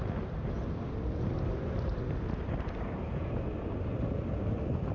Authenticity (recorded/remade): remade